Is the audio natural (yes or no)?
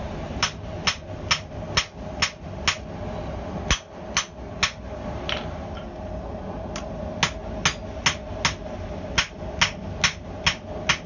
yes